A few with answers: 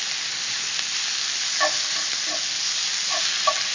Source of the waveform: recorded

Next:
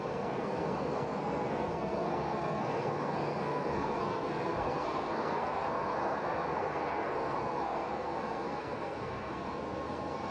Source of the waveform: remade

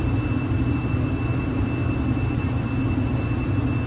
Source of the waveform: recorded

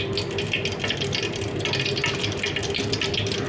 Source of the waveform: recorded